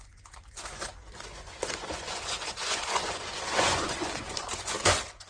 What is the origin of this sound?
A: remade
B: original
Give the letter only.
A